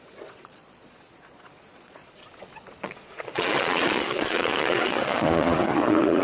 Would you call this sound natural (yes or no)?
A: no